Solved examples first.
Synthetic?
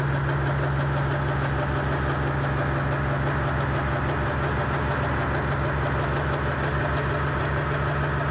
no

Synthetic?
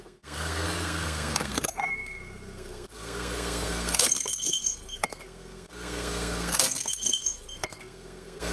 yes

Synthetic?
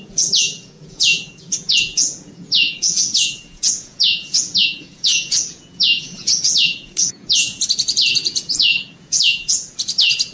yes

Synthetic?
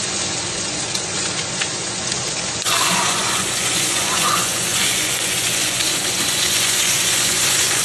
yes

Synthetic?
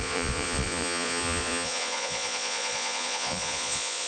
yes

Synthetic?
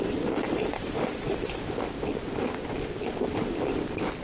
yes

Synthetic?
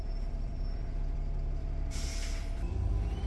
yes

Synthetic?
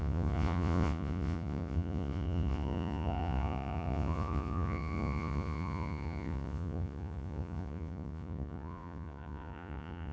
yes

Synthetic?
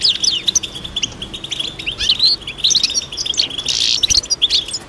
no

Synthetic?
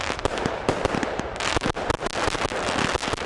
no